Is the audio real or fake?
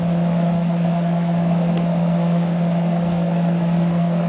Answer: fake